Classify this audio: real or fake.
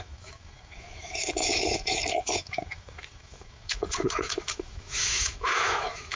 fake